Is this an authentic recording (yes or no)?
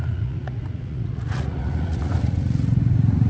no